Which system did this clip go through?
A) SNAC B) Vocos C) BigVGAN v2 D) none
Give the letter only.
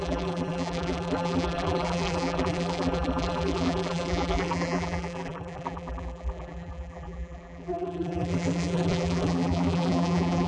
C